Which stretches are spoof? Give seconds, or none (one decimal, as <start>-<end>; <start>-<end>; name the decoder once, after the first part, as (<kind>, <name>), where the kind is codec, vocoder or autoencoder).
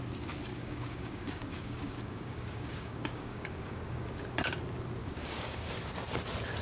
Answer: 0.5-4.2 (codec, DAC); 5.0-5.7